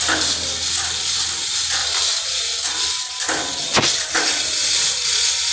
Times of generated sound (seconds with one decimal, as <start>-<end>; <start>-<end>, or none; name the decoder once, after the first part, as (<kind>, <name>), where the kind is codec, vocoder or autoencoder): none